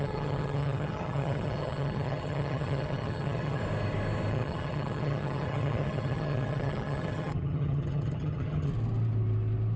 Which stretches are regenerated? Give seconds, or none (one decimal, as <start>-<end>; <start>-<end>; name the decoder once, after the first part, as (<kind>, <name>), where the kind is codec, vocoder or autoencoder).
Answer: 0.0-3.6 (vocoder, HiFi-GAN); 4.3-8.7